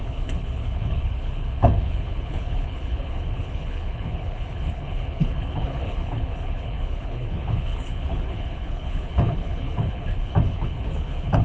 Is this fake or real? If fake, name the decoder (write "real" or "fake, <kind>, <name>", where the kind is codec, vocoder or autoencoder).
fake, codec, HILCodec